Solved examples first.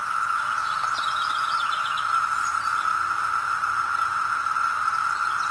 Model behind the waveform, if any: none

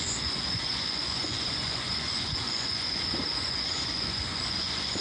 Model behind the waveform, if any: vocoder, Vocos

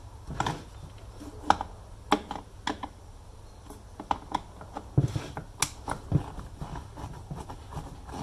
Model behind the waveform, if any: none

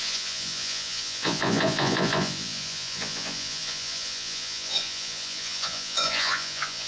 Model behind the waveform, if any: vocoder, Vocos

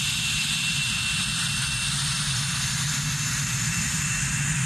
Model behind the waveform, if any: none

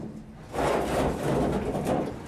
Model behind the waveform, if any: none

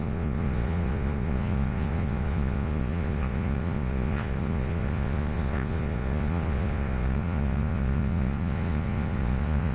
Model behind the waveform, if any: vocoder, Vocos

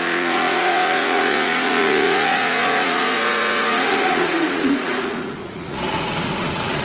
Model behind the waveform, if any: vocoder, Vocos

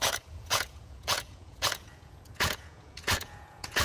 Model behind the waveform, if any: vocoder, Vocos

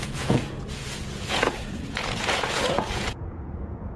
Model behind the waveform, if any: vocoder, Vocos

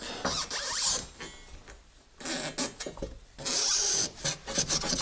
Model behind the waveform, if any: none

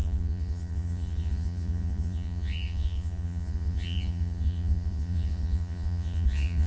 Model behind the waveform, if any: vocoder, Vocos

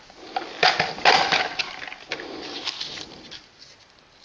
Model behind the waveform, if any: none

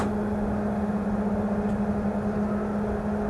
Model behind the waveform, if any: none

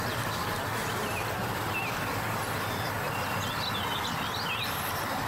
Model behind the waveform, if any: none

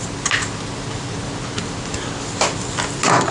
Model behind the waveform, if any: none